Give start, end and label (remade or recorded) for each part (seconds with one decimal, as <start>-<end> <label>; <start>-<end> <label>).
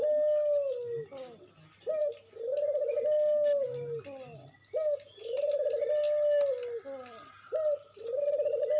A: 0.0-8.8 recorded